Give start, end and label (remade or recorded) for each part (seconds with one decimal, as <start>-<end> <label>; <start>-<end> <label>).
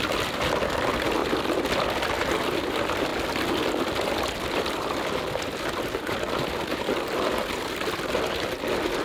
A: 0.0-9.0 recorded